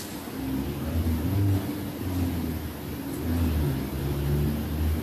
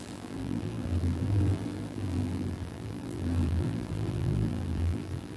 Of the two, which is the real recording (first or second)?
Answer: first